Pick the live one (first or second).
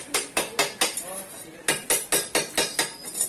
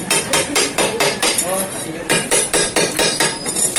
first